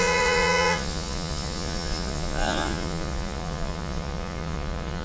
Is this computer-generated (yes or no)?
yes